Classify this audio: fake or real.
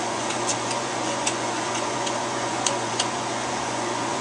fake